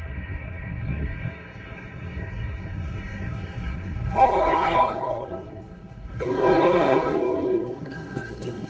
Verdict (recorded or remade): remade